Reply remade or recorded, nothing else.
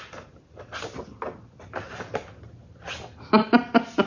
recorded